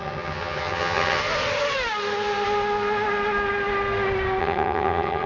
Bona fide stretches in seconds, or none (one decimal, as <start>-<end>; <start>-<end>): 1.2-4.4